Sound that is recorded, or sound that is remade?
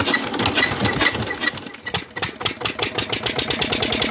recorded